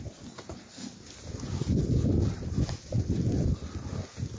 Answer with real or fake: real